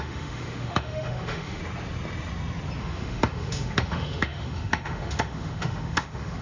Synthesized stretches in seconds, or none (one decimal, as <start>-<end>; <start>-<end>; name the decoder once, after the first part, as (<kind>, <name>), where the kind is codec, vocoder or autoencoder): 0.0-1.6 (autoencoder, DAC-VAE); 2.8-6.4